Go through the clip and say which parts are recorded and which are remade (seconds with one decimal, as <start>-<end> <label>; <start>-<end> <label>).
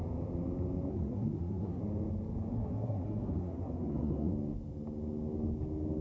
0.0-0.9 recorded; 0.9-1.8 remade; 1.8-2.5 recorded; 2.5-4.3 remade; 4.3-6.0 recorded